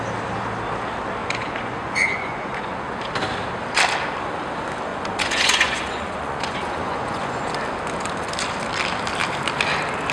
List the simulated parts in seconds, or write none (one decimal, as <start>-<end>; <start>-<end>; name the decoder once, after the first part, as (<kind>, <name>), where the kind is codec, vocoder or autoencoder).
1.2-3.1 (vocoder, Vocos); 4.9-7.5